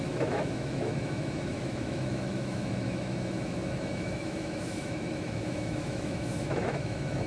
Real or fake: fake